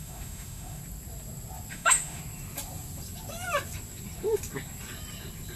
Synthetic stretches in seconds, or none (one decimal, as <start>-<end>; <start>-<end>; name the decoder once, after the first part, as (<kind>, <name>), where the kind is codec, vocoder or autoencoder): 0.0-0.8 (autoencoder, DAC-VAE); 1.7-2.2